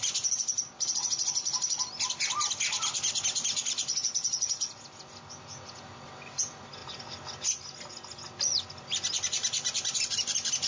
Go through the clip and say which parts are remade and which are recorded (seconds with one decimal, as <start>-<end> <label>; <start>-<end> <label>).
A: 0.0-10.7 recorded